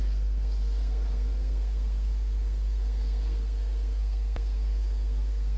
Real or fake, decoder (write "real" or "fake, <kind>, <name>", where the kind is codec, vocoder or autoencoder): fake, codec, SNAC